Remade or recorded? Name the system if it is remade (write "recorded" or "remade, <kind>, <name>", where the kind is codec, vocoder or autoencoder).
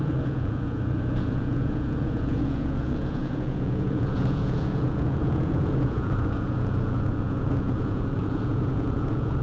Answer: remade, vocoder, Vocos